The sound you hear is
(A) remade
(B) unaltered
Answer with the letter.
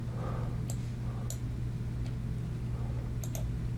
B